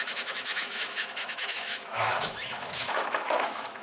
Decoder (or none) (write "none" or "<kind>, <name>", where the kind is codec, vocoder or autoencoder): autoencoder, DAC-VAE